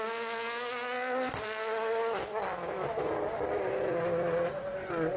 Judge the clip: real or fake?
real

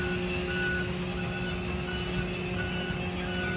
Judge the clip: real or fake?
real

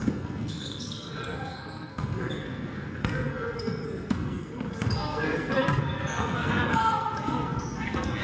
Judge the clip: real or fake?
fake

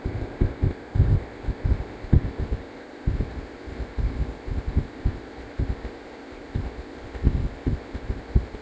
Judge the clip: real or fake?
fake